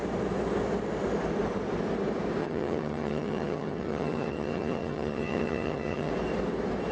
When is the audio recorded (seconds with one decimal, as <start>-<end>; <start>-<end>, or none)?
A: 0.0-2.4; 6.1-6.9